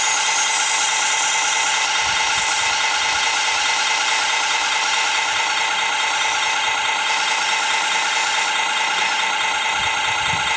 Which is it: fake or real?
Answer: fake